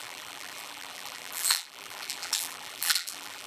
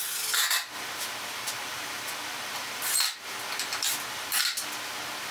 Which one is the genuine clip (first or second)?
second